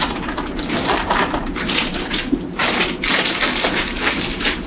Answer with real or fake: fake